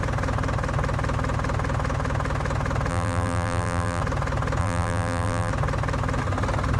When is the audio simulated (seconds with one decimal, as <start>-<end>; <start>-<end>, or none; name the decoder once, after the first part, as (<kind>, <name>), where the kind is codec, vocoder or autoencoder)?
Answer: 2.9-4.0 (vocoder, BigVGAN v2); 4.6-5.5